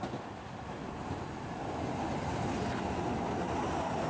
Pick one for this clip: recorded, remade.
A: recorded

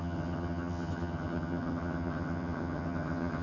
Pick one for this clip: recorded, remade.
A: remade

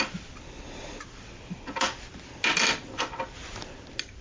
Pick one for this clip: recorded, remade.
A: recorded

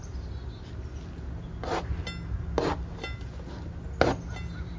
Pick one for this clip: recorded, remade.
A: recorded